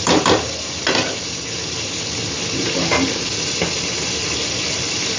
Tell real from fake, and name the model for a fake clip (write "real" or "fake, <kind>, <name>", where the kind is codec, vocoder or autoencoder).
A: real